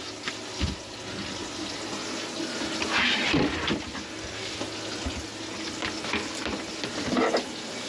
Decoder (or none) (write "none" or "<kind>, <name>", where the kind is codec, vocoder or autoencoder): none